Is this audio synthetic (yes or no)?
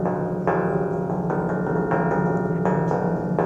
no